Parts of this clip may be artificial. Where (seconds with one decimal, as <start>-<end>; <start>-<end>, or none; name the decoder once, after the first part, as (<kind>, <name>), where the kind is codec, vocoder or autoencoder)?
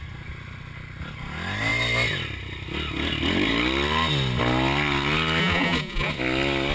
5.4-6.1 (vocoder, Vocos)